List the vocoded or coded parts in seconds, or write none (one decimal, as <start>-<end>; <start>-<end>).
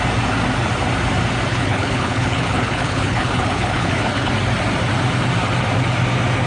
1.5-4.3